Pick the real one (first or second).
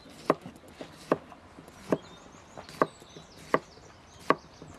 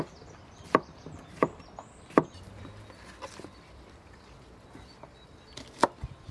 first